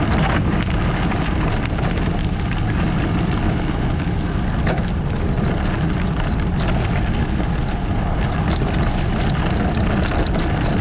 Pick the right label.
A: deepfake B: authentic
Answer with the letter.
B